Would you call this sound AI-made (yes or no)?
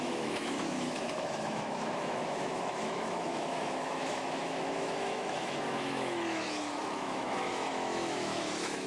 yes